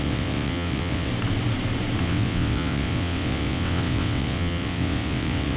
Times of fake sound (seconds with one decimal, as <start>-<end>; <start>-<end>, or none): 0.0-1.1; 2.0-5.6